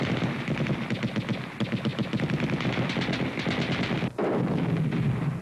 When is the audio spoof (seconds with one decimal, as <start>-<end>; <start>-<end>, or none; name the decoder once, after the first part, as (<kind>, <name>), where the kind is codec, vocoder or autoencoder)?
none